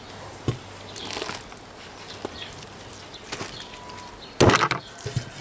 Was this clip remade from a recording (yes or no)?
no